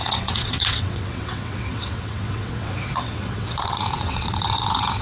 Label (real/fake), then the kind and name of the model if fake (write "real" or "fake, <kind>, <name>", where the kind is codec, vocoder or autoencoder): fake, vocoder, WaveNeXt